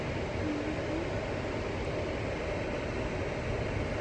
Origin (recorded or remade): recorded